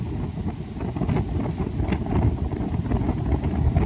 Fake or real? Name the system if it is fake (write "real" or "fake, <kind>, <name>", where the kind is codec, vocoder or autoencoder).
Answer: real